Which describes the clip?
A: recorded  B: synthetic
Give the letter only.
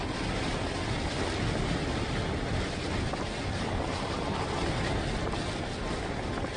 A